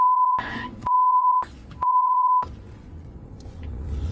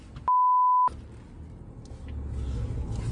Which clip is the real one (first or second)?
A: second